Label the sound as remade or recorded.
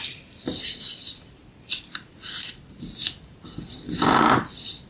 recorded